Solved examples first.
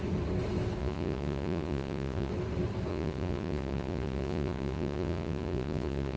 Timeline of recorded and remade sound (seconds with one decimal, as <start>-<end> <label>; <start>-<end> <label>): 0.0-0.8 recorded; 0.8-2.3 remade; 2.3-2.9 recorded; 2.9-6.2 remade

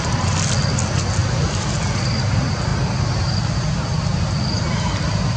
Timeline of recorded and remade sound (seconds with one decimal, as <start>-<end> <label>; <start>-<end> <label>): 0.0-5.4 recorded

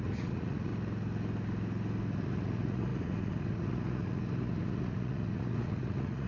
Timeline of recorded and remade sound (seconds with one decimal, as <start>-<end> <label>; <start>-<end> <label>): 0.0-0.7 remade; 0.7-2.1 recorded; 2.1-6.3 remade

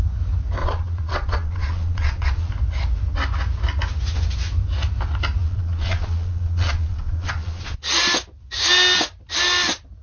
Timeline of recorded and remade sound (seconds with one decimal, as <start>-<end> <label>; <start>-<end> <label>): 0.0-0.6 recorded; 0.6-2.5 remade; 2.5-5.4 recorded; 5.4-8.0 remade; 8.0-10.0 recorded

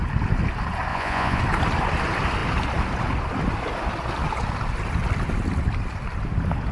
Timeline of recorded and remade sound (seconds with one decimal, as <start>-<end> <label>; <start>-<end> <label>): 0.0-0.9 recorded; 0.9-1.4 remade; 1.4-6.7 recorded